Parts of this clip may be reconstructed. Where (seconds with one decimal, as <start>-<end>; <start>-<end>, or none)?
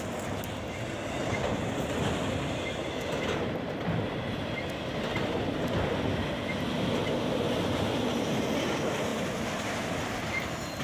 0.0-10.8